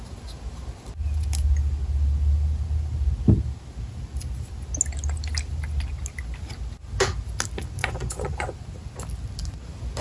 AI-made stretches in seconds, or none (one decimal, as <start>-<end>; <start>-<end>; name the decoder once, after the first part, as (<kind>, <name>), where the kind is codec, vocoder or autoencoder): 7.8-8.5 (vocoder, Vocos)